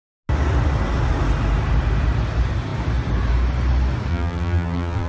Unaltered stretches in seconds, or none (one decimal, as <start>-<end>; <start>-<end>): 0.0-4.1